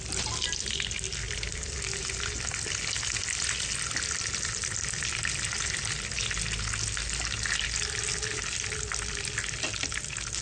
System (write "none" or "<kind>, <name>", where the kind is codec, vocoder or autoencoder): none